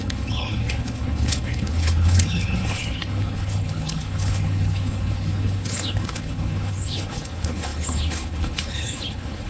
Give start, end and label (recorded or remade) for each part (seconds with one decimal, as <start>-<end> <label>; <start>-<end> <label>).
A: 0.0-9.5 remade